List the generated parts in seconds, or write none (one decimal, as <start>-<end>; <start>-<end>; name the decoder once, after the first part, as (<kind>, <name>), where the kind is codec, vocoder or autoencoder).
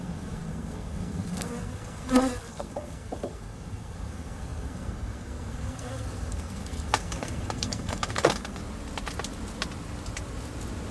0.0-8.6 (codec, SNAC)